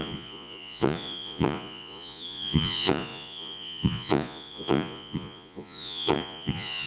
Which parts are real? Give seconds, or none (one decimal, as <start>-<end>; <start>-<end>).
none